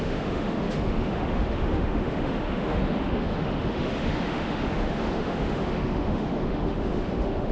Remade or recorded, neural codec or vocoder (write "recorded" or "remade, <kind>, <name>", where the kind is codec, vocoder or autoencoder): remade, autoencoder, DAC-VAE